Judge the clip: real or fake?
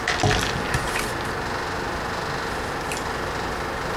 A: real